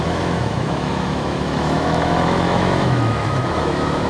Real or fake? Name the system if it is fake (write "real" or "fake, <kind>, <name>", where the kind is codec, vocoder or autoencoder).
fake, autoencoder, DAC-VAE